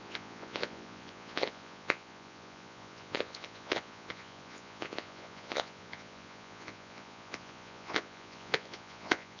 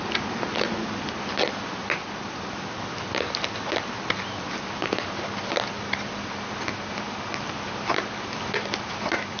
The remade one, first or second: first